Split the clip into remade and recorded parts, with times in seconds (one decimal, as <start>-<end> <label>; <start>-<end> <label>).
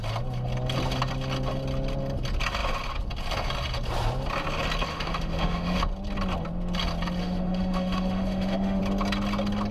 0.0-4.9 recorded; 4.9-5.8 remade; 5.8-7.2 recorded; 7.2-8.8 remade; 8.8-9.7 recorded